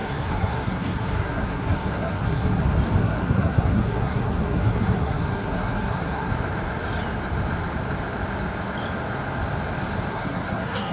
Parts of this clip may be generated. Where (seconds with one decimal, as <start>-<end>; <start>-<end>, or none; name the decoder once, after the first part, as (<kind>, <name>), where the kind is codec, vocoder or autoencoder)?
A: 0.0-2.6 (codec, SNAC); 3.0-6.3; 10.1-10.9